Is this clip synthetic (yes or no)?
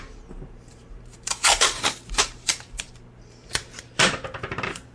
yes